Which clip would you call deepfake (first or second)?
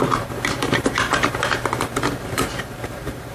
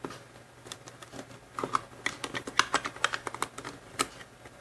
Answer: first